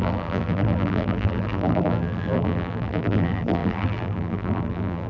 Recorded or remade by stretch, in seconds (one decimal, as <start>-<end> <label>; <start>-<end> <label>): 0.0-5.1 remade